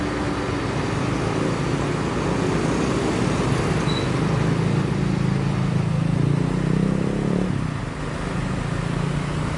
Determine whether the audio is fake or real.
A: real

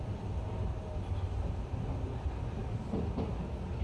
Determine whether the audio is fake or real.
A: real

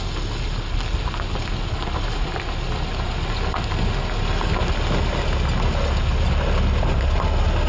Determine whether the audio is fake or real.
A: real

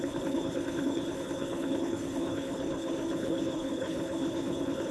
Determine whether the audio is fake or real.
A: fake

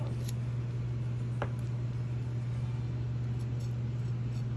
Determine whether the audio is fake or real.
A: real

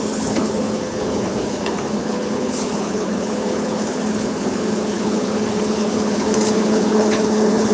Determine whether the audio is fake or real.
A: fake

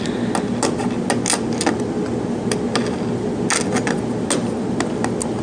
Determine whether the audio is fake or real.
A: real